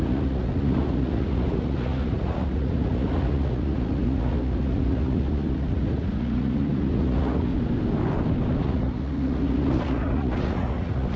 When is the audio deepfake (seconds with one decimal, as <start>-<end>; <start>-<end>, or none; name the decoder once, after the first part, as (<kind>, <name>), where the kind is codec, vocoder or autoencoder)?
0.0-7.5 (vocoder, Vocos); 8.6-11.2